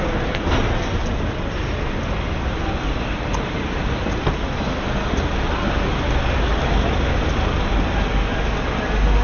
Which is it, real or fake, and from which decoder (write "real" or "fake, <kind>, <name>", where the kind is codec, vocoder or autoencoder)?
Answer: real